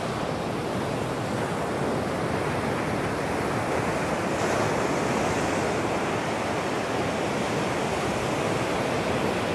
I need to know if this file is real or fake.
real